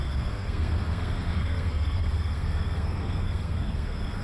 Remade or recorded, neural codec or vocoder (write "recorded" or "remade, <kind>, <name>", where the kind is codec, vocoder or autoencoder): remade, codec, SNAC